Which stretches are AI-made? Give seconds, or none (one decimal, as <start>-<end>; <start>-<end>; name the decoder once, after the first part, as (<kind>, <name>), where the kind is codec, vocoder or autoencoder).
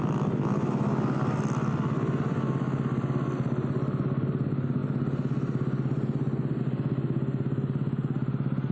none